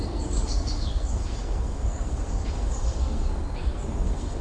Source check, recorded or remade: remade